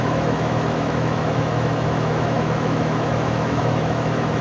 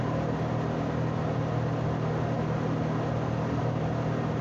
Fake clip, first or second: first